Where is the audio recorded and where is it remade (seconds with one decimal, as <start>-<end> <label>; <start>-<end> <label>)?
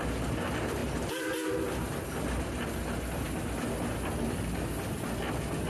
0.0-5.7 recorded